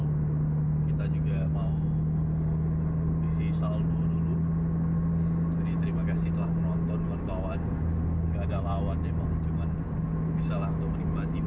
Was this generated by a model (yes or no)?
no